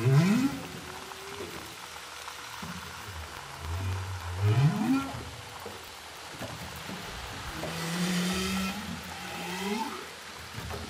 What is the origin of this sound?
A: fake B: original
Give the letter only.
B